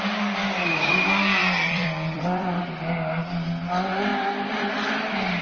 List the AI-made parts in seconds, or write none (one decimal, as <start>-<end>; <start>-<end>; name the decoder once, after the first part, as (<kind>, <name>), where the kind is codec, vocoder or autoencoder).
1.4-2.6 (vocoder, BigVGAN v2)